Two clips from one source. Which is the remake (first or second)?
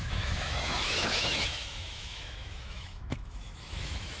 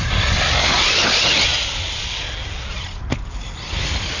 first